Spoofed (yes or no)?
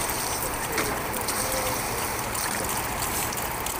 yes